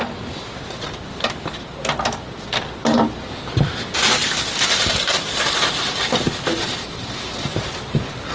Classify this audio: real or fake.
real